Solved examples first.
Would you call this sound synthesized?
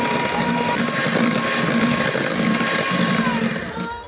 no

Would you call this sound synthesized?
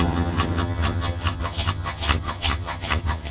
yes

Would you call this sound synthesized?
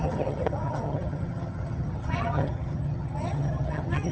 yes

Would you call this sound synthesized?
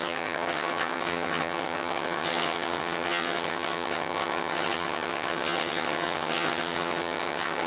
yes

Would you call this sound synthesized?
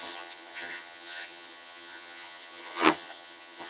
yes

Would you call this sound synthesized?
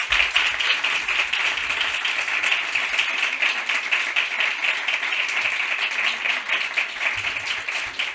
no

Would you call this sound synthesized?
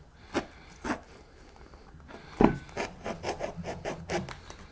no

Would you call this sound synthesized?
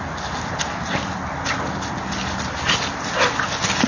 no